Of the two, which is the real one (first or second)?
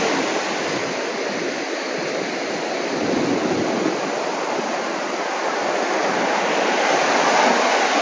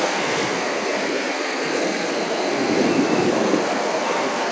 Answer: first